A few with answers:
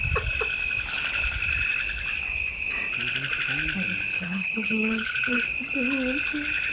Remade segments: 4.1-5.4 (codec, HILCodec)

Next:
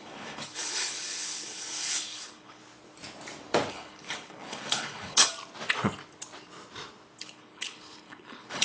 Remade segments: 0.0-2.6 (codec, HILCodec); 3.7-5.3; 7.2-8.6

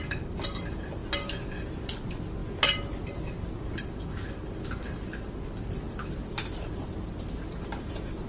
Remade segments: none

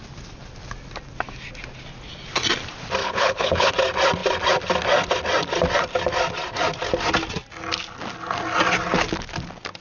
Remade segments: 3.0-3.7 (codec, HILCodec)

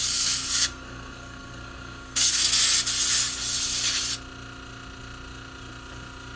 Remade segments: 0.0-2.6 (codec, SNAC)

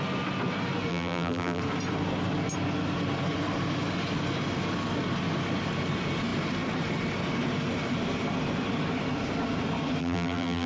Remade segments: 0.9-1.6 (vocoder, BigVGAN v2); 10.0-10.7